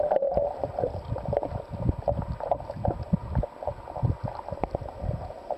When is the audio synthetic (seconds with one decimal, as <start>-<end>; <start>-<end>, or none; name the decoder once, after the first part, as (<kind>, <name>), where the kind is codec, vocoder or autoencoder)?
none